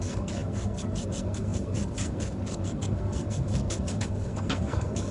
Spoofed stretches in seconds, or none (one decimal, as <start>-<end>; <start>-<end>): 0.0-5.1